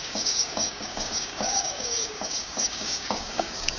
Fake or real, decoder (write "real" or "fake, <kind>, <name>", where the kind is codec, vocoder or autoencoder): fake, codec, DAC